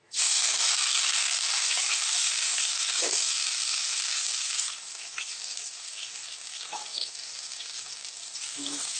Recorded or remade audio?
remade